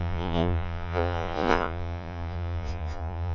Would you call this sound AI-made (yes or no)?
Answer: yes